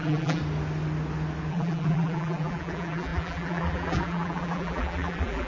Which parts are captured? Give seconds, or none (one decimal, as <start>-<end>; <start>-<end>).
0.4-1.5